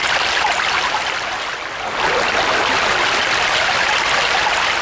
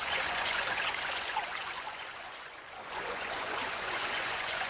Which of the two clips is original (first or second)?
first